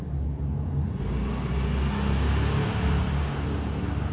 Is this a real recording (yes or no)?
yes